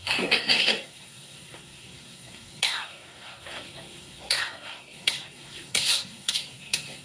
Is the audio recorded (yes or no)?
no